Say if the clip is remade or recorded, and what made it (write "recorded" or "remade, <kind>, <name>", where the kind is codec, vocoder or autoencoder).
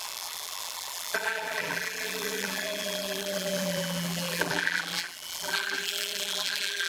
remade, vocoder, BigVGAN v2